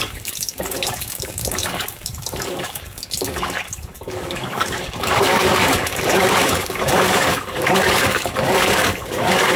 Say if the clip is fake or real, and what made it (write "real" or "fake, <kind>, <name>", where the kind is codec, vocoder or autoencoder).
fake, codec, DAC